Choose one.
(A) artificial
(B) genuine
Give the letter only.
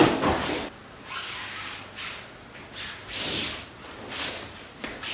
B